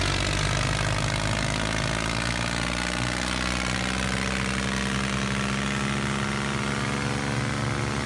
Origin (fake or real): real